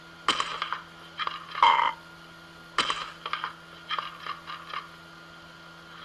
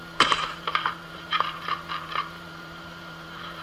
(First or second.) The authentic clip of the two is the first